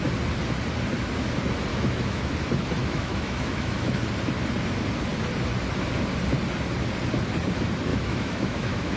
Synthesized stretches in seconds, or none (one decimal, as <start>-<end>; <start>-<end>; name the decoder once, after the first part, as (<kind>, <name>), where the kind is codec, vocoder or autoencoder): 1.7-2.3 (autoencoder, DAC-VAE); 2.8-4.0; 7.9-9.0